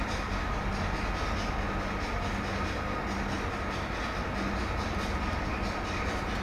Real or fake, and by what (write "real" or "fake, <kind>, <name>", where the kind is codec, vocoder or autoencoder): real